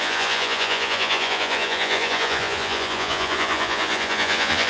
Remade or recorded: remade